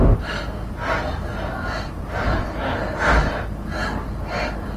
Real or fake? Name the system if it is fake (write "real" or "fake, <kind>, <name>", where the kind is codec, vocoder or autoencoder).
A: real